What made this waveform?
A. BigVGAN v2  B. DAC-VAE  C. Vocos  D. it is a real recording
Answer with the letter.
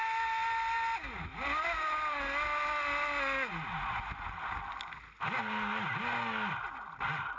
D